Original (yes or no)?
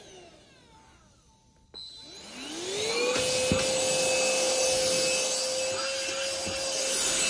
yes